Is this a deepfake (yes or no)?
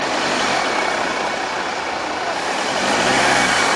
no